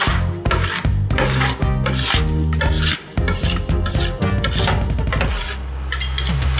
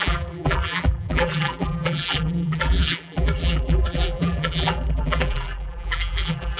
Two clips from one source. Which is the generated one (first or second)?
second